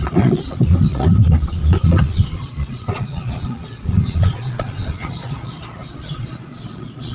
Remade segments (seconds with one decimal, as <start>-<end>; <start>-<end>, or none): 0.0-7.1